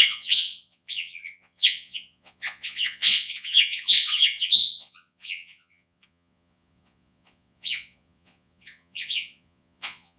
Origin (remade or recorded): remade